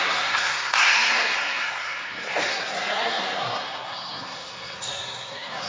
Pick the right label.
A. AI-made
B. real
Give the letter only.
A